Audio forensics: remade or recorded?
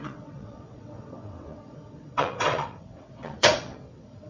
remade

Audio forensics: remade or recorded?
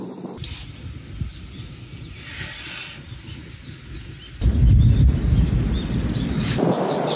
recorded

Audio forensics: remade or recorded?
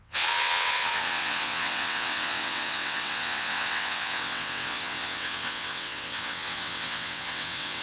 remade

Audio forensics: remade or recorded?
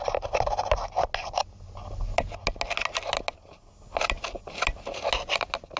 recorded